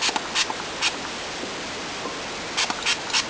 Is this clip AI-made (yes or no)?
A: no